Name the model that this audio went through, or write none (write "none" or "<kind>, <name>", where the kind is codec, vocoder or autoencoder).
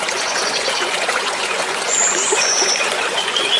vocoder, Vocos